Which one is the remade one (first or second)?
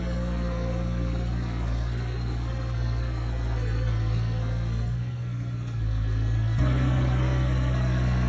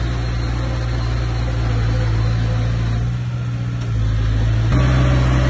first